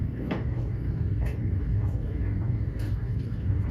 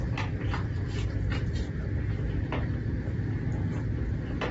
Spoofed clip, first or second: first